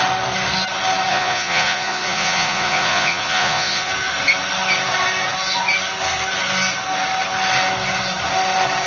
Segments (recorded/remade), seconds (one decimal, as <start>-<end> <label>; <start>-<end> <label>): 0.0-1.1 recorded; 1.1-3.9 remade; 3.9-8.9 recorded